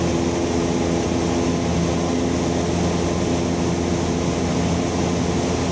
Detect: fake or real real